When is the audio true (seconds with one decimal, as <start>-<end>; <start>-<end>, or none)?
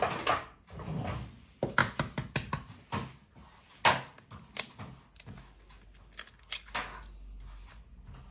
0.0-8.3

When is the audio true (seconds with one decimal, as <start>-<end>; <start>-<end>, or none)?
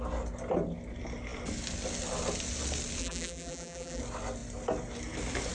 0.0-3.0; 4.0-5.5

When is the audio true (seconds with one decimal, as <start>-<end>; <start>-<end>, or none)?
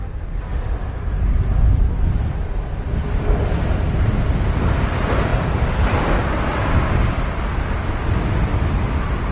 0.0-5.3; 8.0-9.3